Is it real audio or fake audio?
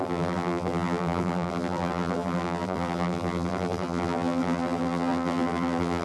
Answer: fake